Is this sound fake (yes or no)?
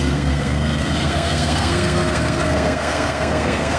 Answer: yes